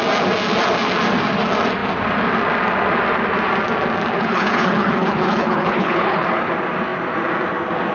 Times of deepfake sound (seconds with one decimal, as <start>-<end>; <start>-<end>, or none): 4.1-6.5